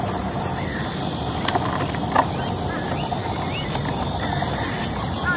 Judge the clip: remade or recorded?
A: recorded